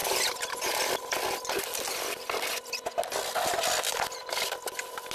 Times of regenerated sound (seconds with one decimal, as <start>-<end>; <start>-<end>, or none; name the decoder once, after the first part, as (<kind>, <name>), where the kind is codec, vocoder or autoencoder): 0.0-0.9 (vocoder, BigVGAN v2)